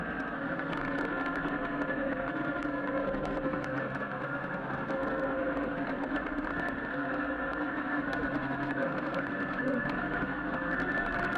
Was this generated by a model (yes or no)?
yes